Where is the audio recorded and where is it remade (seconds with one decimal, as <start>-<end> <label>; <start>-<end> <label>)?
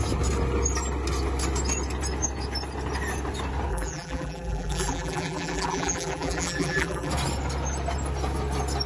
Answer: 0.0-3.7 recorded; 3.7-7.1 remade; 7.1-8.9 recorded